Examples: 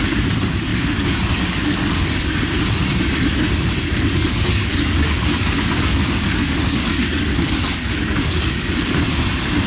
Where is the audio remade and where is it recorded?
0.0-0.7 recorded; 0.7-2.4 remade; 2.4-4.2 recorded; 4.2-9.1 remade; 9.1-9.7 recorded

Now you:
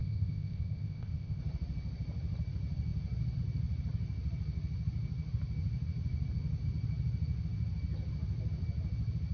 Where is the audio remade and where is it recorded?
0.0-1.4 remade; 1.4-9.3 recorded

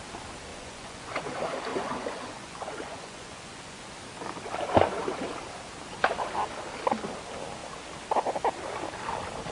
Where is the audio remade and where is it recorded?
0.0-0.5 recorded; 0.5-1.2 remade; 1.2-1.7 recorded; 1.7-3.9 remade; 3.9-9.5 recorded

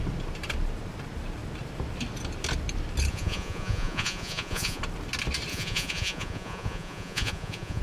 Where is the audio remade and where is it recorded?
0.0-3.1 recorded; 3.1-4.8 remade; 4.8-5.5 recorded; 5.5-7.8 remade

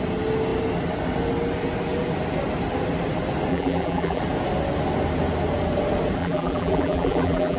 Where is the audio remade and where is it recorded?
0.0-3.5 recorded; 3.5-4.2 remade; 4.2-6.2 recorded; 6.2-7.6 remade